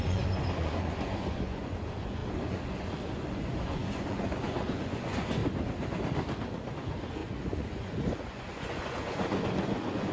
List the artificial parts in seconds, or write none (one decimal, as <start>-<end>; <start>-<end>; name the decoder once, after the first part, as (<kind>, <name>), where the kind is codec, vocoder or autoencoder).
0.0-5.4 (vocoder, Vocos); 6.7-10.1